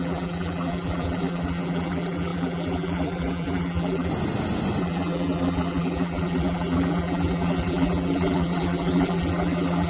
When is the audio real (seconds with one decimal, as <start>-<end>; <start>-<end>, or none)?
4.1-4.8